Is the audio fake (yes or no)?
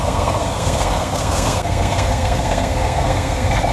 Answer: yes